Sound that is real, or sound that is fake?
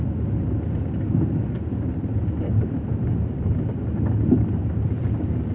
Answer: real